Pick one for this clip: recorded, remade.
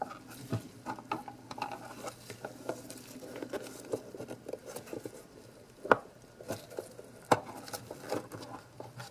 recorded